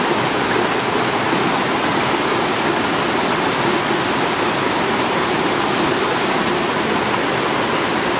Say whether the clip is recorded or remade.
recorded